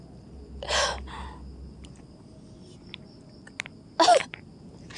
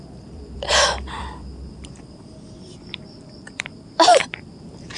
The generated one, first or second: second